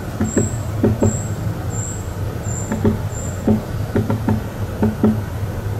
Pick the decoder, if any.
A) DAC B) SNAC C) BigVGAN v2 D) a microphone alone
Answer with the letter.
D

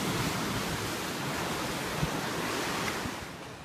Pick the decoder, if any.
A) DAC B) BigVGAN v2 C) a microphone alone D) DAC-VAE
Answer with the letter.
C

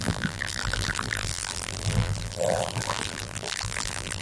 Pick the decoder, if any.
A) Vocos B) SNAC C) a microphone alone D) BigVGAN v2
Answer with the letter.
D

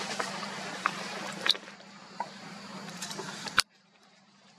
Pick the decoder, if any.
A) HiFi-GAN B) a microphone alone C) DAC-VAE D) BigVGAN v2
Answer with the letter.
D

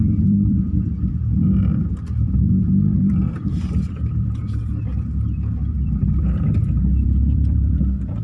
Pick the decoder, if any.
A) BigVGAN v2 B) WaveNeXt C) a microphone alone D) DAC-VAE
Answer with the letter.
A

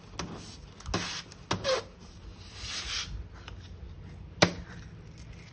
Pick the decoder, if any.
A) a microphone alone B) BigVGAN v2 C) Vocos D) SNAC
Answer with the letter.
A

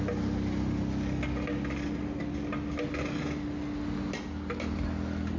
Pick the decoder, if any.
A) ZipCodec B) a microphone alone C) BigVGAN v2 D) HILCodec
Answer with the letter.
B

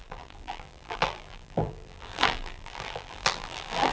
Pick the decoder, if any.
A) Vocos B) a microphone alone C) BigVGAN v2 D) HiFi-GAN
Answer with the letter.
C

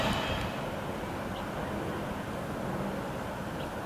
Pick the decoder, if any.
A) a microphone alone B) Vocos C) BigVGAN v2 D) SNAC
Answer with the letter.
A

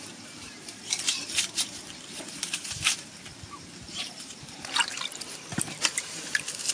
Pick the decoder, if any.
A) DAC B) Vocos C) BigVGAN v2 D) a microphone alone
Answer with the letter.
C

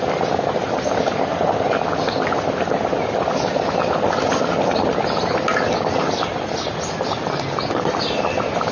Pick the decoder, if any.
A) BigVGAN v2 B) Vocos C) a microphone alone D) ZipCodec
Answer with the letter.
C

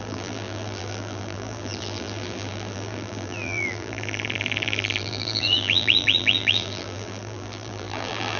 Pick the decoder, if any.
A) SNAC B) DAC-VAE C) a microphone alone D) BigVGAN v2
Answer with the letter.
D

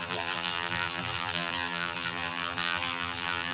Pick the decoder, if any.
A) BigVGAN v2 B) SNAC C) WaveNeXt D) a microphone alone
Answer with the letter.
A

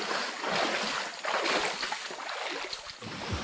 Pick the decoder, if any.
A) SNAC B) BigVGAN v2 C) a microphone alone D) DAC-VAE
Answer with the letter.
C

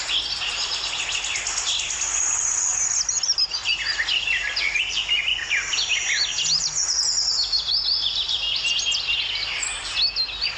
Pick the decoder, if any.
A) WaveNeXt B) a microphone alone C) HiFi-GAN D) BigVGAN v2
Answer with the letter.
B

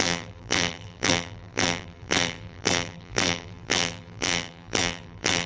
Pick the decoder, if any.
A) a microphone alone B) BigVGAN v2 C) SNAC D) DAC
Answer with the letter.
B